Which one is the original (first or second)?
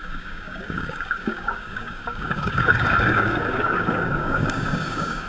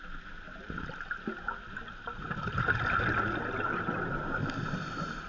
second